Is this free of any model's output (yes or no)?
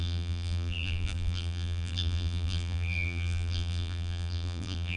no